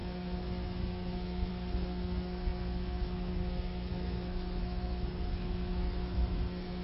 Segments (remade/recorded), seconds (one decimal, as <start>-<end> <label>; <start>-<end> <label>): 0.0-6.8 remade